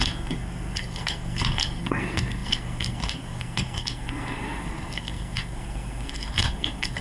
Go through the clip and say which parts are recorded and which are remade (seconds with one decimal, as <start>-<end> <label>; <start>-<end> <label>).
0.0-7.0 remade